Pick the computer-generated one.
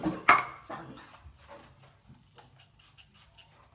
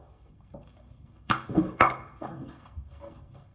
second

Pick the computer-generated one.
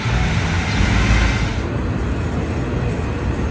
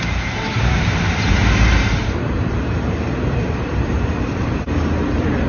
second